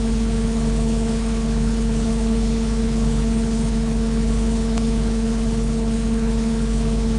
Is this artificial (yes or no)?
yes